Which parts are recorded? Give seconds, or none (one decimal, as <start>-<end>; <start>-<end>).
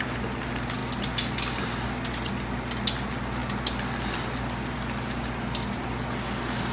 0.0-6.7